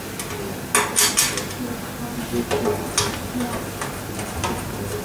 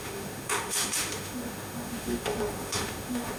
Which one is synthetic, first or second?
second